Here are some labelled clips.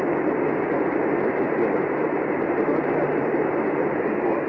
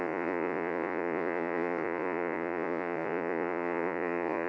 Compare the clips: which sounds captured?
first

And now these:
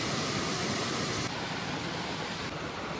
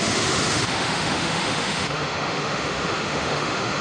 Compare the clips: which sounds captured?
first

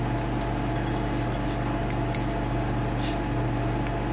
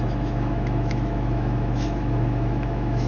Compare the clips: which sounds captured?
first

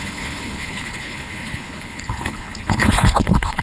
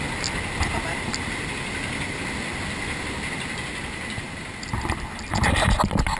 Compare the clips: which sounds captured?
second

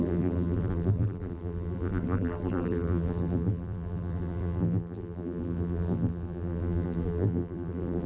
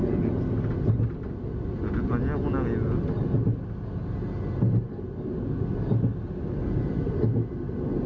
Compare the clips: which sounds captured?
second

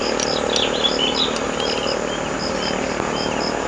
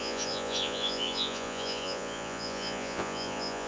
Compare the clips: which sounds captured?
first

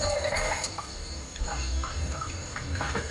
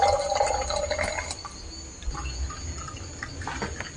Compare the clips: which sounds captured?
second